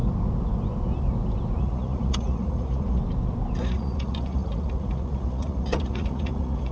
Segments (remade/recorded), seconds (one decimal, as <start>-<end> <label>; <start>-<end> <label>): 0.0-1.6 recorded; 1.6-3.0 remade; 3.0-3.6 recorded; 3.6-6.7 remade